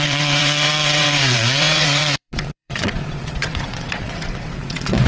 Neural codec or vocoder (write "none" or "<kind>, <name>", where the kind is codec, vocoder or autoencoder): vocoder, WaveNeXt